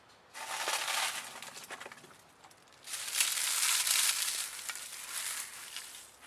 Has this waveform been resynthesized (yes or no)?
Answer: no